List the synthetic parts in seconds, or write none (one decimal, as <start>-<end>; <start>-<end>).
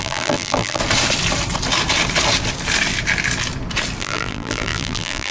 0.0-0.8; 4.0-5.3